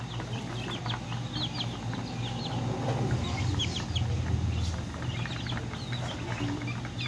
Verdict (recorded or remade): recorded